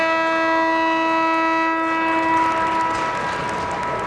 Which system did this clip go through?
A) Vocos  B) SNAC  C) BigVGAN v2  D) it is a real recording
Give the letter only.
D